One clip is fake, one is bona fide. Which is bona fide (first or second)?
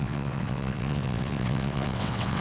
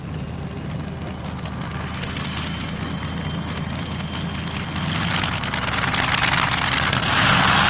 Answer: second